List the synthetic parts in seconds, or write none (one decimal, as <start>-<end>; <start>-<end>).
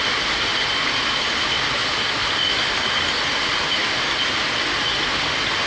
none